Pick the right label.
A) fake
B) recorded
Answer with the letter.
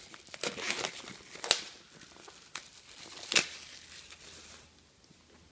B